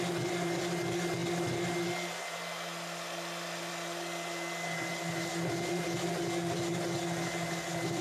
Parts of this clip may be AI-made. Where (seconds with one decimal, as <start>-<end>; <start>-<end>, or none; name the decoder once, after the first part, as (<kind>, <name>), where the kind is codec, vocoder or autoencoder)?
none